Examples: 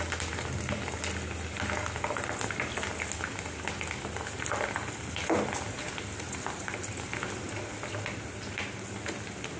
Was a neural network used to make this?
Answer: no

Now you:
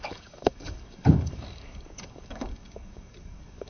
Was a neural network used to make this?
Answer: yes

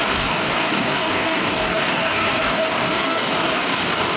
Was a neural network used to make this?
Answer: yes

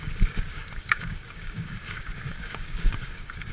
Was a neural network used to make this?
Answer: yes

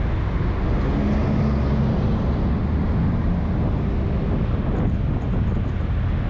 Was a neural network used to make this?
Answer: no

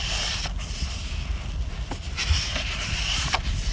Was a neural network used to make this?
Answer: no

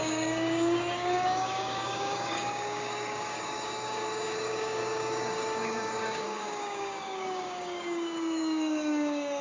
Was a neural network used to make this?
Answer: yes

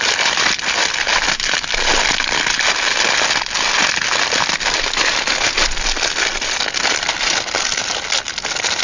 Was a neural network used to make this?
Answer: no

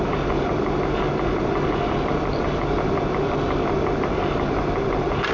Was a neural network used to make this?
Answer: no